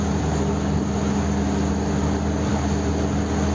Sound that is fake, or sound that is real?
real